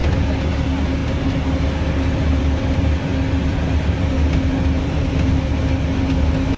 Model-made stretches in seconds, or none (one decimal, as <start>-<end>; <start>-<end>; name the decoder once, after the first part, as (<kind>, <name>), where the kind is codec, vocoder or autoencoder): none

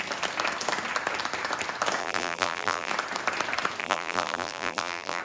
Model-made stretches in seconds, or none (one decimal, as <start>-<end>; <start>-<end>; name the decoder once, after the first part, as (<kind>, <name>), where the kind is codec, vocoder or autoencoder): 2.0-2.9 (vocoder, BigVGAN v2); 3.8-5.2

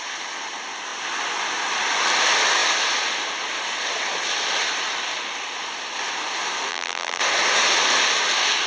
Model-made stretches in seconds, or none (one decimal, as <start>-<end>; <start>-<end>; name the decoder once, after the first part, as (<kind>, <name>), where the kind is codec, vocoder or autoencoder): 6.7-7.2 (vocoder, BigVGAN v2)

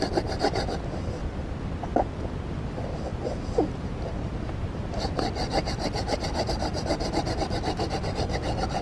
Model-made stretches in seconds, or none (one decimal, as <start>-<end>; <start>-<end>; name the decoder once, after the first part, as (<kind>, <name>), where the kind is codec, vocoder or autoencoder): 0.0-1.2 (vocoder, BigVGAN v2); 1.9-3.1; 4.4-6.7

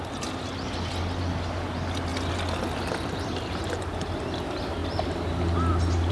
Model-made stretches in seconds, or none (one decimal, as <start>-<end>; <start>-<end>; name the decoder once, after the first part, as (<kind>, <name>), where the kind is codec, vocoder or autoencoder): none

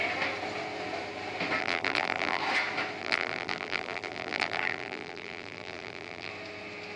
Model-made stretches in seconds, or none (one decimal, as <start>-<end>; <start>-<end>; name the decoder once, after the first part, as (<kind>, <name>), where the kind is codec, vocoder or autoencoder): 1.6-2.4 (vocoder, BigVGAN v2); 3.0-6.3

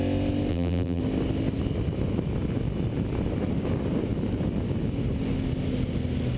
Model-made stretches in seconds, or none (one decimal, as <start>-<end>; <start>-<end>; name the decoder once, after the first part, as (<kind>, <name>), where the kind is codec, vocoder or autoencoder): 0.5-1.0 (vocoder, BigVGAN v2)

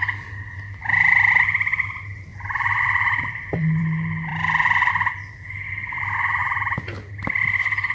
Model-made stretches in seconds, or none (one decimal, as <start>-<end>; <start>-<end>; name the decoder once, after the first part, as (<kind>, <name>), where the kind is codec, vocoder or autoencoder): 2.3-3.8 (vocoder, BigVGAN v2)